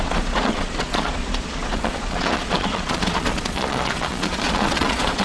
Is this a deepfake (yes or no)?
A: yes